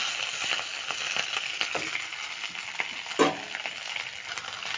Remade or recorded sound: recorded